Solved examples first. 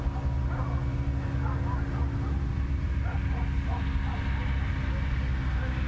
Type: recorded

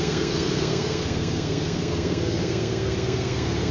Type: remade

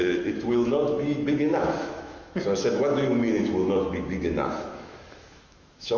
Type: remade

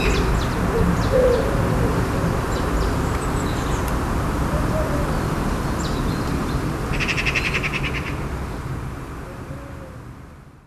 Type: remade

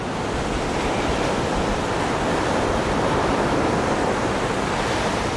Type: recorded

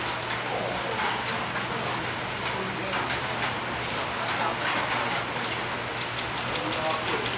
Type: recorded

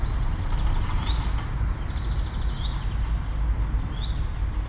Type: recorded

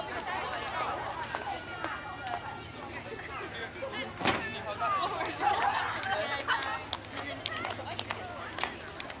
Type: recorded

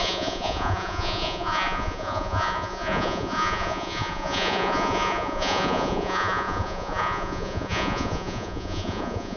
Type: remade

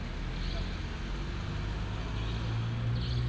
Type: recorded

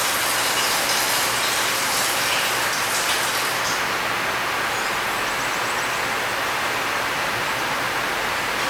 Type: recorded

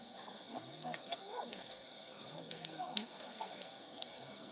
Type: remade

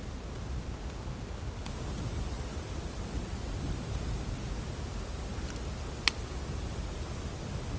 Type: recorded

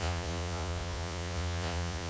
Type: remade